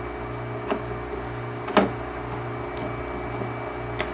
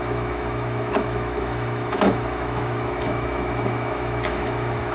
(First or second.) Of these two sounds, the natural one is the first